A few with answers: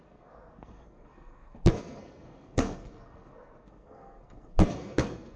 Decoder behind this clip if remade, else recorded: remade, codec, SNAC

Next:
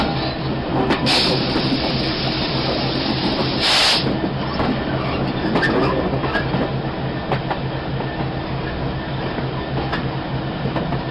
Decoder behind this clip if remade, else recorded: recorded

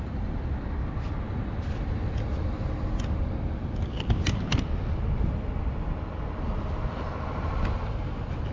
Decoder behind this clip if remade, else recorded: recorded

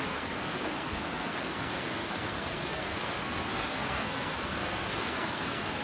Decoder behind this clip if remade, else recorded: remade, codec, SNAC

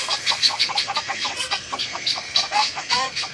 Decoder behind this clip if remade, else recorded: remade, codec, SNAC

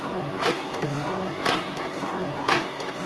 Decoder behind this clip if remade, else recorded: remade, codec, SNAC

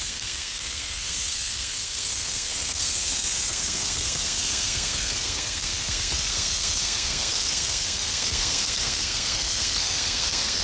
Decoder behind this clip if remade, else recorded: remade, codec, SNAC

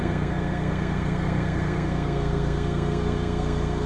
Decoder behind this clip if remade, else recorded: remade, codec, SNAC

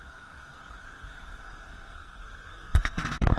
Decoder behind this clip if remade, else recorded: remade, codec, SNAC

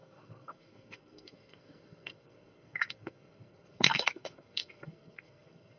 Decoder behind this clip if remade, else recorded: remade, codec, SNAC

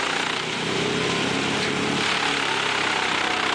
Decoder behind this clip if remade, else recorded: recorded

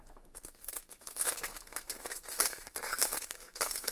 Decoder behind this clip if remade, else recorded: remade, codec, SNAC